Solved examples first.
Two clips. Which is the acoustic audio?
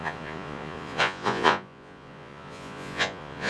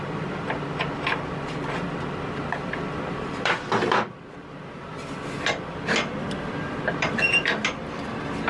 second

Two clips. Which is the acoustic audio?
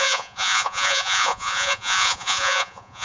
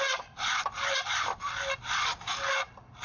second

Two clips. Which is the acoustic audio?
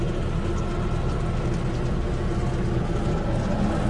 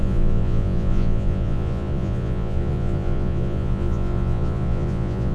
first